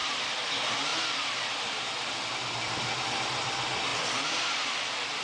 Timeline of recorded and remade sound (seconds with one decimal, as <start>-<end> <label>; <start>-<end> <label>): 0.0-0.5 remade; 0.5-5.2 recorded